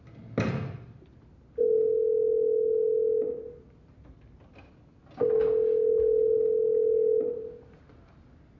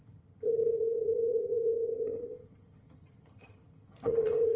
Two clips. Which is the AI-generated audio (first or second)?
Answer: second